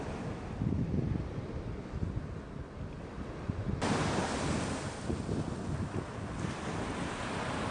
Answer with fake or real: real